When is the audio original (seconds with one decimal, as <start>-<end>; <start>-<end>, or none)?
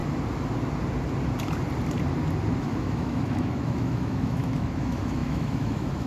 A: 0.0-2.6